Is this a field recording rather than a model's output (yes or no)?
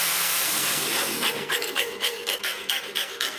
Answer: no